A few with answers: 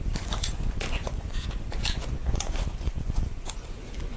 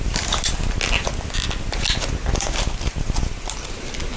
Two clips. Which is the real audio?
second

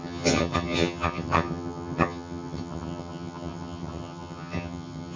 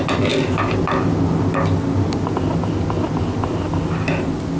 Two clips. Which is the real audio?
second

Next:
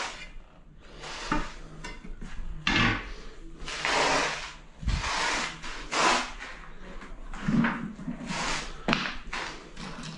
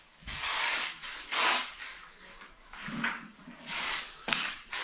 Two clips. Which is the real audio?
first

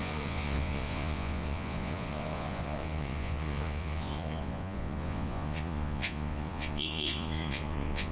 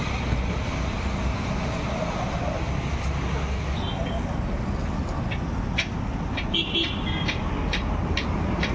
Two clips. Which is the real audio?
second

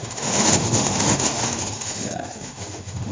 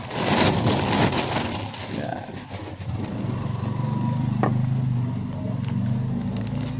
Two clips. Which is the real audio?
second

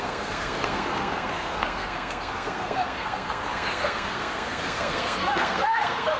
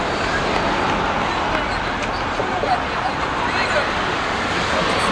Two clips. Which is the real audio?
second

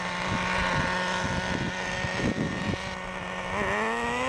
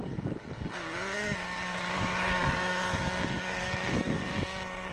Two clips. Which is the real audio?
first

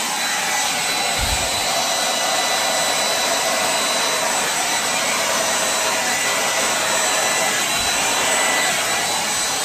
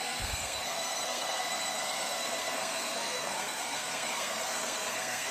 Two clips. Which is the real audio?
first